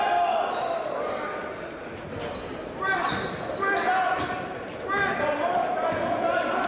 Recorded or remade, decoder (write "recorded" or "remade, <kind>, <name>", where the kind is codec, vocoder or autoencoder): recorded